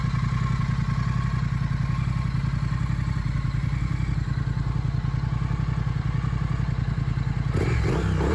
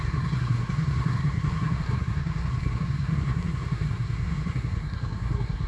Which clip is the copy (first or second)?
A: second